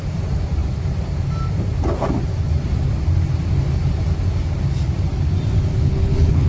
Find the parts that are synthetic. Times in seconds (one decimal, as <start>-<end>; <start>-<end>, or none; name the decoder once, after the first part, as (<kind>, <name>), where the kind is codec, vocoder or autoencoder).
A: 5.8-6.5 (codec, HILCodec)